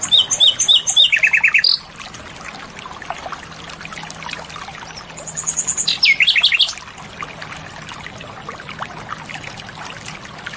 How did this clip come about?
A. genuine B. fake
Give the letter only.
A